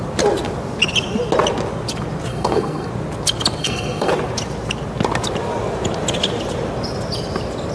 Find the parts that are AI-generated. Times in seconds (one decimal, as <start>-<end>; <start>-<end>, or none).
2.3-2.9; 3.6-4.1